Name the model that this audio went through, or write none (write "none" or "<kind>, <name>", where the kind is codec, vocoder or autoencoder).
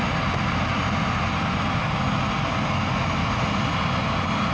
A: none